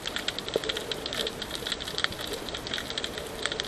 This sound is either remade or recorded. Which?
remade